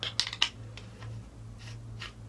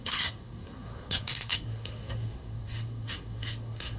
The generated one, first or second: second